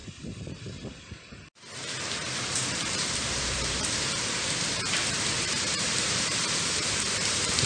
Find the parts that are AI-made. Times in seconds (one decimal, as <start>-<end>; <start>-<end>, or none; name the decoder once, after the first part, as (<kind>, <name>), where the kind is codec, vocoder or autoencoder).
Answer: 2.1-7.7 (vocoder, BigVGAN v2)